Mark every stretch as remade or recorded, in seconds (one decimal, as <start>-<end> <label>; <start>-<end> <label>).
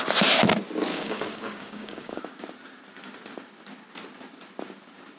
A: 0.0-0.9 recorded; 0.9-2.2 remade; 2.2-5.2 recorded